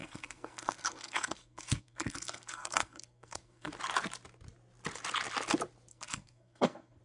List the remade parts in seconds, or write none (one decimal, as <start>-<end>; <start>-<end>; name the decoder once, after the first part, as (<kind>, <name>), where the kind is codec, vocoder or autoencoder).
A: 0.0-3.7 (codec, SNAC); 5.9-7.0